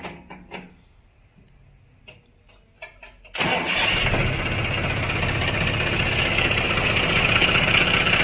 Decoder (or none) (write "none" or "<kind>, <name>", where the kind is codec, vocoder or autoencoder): none